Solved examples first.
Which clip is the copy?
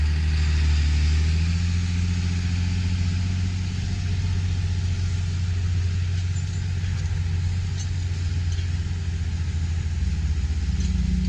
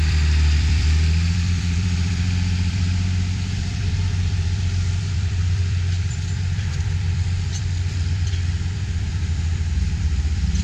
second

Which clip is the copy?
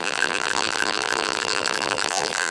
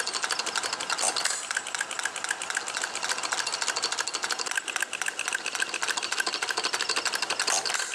first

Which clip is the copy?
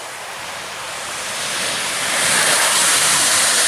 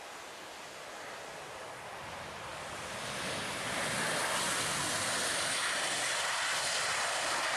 first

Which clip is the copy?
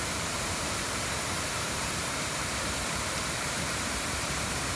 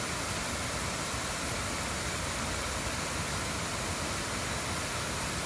first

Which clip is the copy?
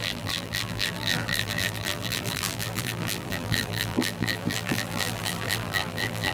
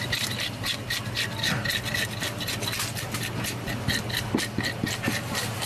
first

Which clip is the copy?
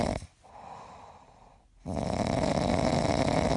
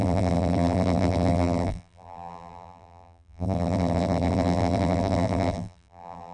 second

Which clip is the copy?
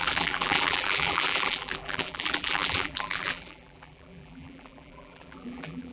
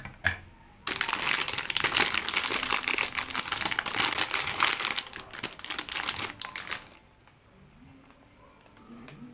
first